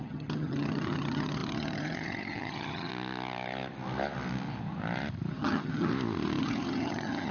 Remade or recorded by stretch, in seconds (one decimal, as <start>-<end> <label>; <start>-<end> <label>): 0.0-2.9 remade; 2.9-5.3 recorded; 5.3-5.9 remade; 5.9-6.4 recorded; 6.4-7.3 remade